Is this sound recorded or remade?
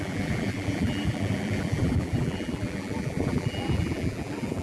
remade